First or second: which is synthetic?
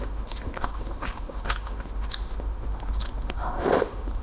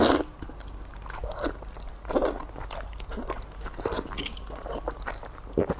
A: first